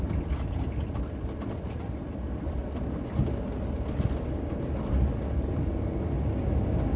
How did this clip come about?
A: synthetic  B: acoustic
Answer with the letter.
B